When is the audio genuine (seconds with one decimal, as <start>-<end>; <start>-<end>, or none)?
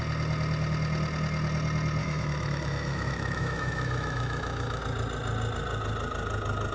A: 0.0-2.0; 4.8-6.7